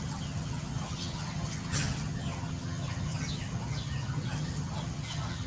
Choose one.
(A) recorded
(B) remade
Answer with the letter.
B